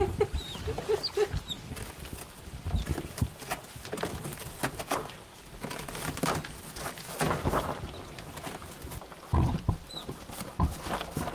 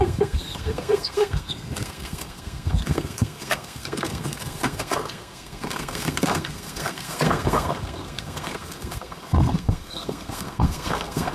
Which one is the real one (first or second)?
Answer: first